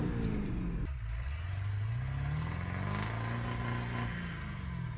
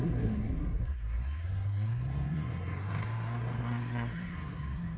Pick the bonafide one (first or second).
first